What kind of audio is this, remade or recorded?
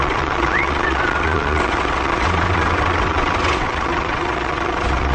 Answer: remade